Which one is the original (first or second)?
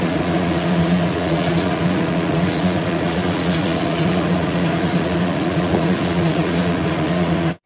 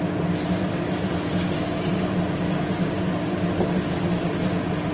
second